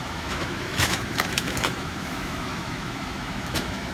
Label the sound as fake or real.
fake